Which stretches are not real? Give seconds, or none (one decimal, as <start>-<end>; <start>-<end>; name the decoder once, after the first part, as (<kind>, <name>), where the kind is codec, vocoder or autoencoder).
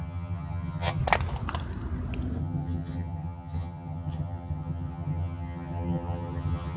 0.0-1.0 (vocoder, HiFi-GAN); 2.4-6.8